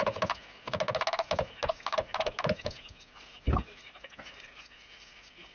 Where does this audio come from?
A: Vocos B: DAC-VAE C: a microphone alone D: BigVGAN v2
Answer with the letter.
C